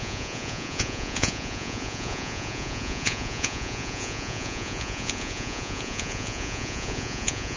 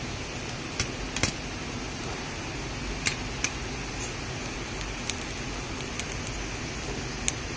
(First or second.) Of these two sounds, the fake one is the first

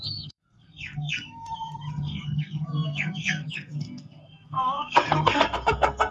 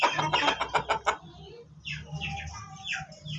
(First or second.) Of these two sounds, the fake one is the first